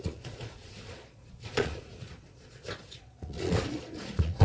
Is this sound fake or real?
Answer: fake